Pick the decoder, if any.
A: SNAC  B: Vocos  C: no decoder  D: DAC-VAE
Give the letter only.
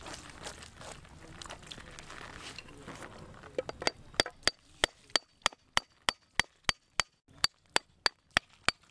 C